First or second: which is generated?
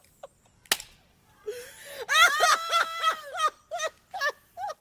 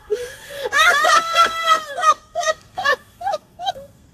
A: second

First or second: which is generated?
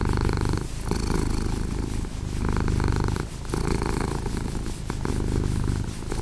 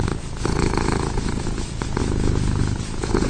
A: second